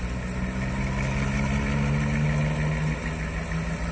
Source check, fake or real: real